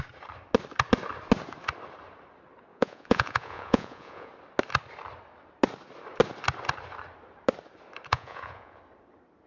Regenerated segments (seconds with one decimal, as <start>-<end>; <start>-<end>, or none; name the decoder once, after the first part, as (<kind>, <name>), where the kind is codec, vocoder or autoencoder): 2.7-4.3 (vocoder, Vocos); 8.1-8.8